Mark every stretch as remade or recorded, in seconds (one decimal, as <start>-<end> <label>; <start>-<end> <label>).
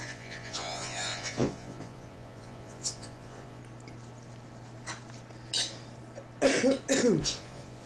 0.0-3.6 remade; 3.6-7.2 recorded; 7.2-7.9 remade